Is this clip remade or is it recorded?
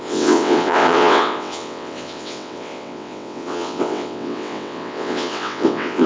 remade